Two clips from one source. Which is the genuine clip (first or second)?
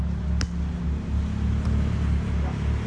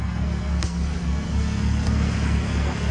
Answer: first